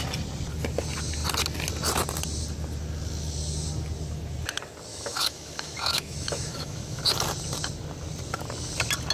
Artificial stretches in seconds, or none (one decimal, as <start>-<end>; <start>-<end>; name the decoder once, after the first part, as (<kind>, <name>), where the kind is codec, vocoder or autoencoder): 4.9-7.0 (autoencoder, DAC-VAE)